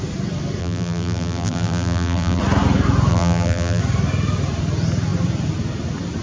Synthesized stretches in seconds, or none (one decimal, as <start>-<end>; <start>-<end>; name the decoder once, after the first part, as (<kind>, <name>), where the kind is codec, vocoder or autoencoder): 0.6-2.4 (vocoder, BigVGAN v2); 3.1-3.8